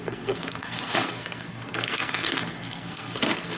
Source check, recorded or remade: remade